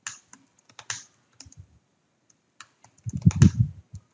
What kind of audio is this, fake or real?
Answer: real